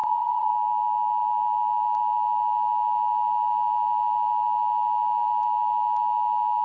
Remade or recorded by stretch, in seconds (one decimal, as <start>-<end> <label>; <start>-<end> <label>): 0.0-0.5 remade; 0.5-6.6 recorded